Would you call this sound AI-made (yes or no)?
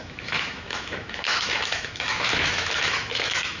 yes